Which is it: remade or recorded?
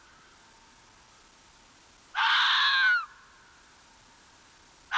recorded